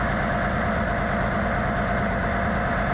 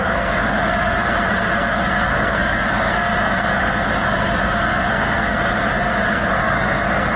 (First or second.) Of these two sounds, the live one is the first